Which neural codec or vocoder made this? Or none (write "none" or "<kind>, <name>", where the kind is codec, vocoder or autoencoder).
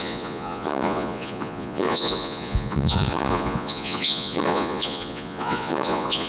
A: vocoder, Vocos